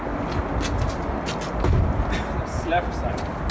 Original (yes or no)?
yes